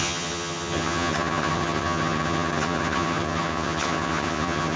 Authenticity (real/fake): fake